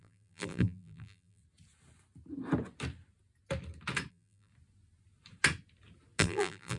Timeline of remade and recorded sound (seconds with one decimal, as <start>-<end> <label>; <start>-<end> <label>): 0.0-1.4 remade; 1.4-4.1 recorded; 4.1-4.5 remade; 4.5-6.2 recorded; 6.2-6.8 remade